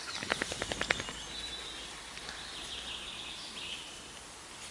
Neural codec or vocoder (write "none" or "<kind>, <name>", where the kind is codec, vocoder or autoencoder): none